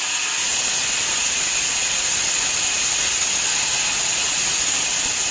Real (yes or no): yes